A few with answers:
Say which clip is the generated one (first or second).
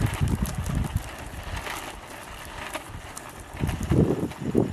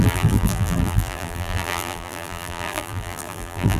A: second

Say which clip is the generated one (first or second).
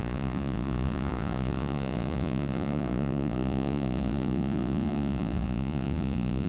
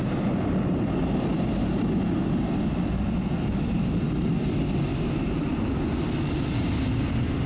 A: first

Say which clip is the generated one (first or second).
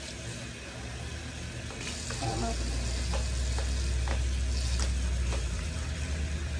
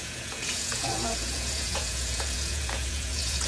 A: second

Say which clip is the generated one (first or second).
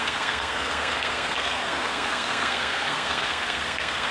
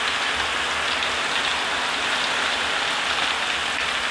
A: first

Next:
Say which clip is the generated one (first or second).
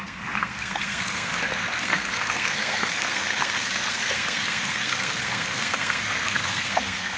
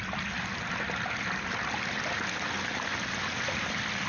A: first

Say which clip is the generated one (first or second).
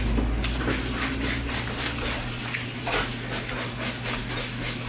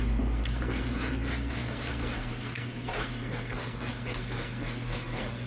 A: second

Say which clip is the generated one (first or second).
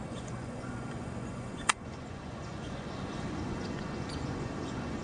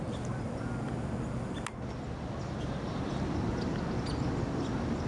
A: first